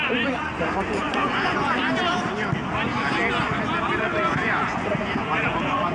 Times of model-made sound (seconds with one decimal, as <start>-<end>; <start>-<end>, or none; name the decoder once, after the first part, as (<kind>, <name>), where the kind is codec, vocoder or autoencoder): 0.0-1.8 (vocoder, Vocos); 3.9-5.9